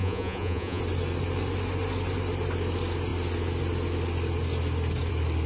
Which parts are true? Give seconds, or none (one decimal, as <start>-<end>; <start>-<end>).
0.8-5.5